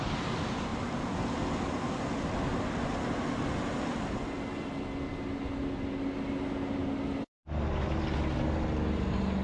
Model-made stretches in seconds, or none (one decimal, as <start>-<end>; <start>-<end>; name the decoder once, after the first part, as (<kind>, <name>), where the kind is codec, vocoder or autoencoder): none